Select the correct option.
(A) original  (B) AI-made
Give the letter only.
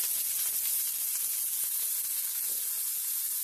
A